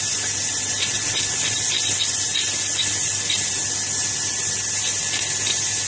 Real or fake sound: real